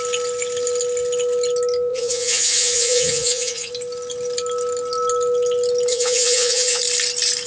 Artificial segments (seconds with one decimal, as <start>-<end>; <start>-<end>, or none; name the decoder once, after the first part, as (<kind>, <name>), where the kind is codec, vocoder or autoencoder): 1.9-3.7 (vocoder, Vocos); 5.9-6.8